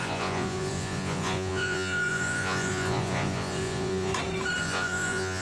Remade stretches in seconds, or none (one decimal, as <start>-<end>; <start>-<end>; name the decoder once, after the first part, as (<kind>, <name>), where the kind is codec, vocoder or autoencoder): 0.0-4.1 (vocoder, Vocos); 4.6-5.4